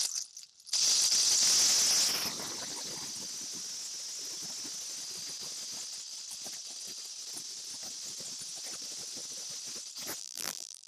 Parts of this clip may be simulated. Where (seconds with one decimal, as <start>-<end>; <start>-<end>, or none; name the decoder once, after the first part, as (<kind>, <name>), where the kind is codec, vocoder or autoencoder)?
10.2-10.9 (vocoder, BigVGAN v2)